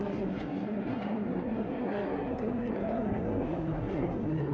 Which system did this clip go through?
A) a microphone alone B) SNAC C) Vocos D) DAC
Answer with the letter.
B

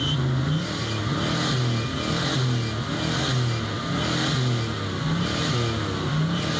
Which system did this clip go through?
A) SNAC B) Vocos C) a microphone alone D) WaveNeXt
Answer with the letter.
C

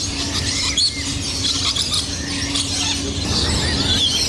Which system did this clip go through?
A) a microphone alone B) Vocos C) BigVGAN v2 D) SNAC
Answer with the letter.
A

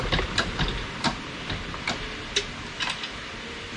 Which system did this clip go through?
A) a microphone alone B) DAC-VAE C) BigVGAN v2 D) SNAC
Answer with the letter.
A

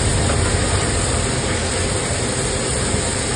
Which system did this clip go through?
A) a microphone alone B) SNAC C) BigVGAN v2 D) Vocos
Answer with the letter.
A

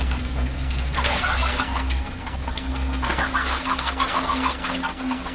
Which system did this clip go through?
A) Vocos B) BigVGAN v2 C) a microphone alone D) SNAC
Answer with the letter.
D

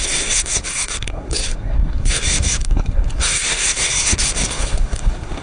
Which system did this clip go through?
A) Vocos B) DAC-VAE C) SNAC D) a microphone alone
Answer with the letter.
C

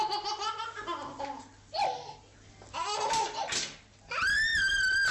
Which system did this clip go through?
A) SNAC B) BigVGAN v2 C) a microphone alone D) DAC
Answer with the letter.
C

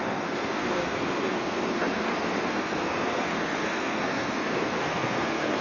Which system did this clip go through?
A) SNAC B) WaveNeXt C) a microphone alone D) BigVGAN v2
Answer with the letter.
A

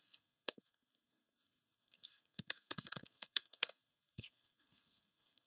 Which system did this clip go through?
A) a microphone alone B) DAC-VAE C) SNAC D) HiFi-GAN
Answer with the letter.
C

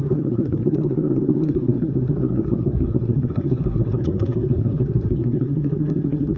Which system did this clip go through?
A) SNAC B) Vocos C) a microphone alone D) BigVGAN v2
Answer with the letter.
A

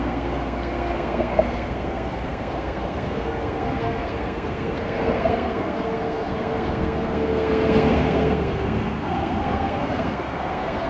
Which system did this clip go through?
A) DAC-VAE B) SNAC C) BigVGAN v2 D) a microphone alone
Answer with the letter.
B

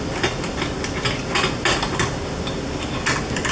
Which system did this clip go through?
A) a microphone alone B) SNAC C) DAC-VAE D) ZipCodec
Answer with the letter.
A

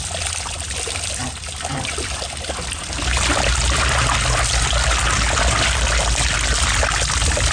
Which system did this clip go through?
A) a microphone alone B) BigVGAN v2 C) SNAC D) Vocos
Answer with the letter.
A